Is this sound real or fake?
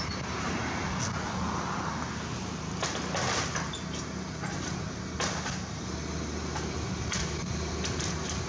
real